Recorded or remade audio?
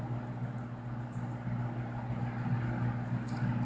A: recorded